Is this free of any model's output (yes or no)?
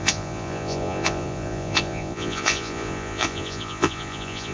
no